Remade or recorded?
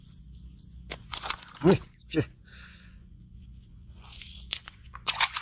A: remade